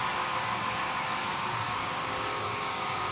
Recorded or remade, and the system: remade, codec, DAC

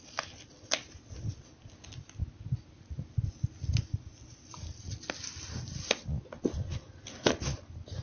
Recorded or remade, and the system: recorded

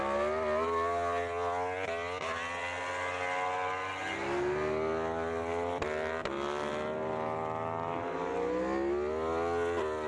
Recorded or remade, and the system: recorded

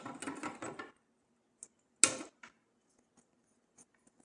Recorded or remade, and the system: recorded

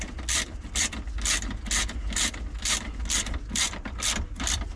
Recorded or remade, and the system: recorded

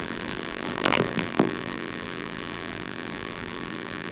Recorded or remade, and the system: remade, vocoder, BigVGAN v2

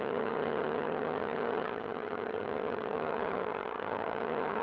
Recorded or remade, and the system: remade, vocoder, HiFi-GAN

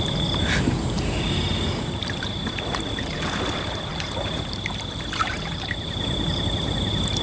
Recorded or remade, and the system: remade, vocoder, BigVGAN v2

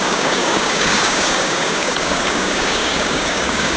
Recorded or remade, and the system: remade, codec, DAC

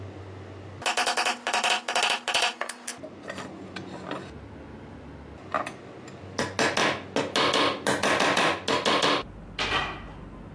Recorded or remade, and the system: recorded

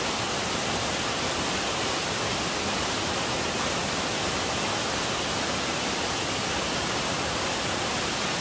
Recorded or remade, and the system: recorded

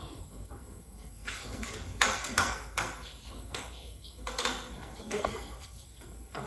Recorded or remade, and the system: remade, codec, SNAC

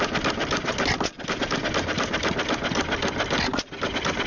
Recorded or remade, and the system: recorded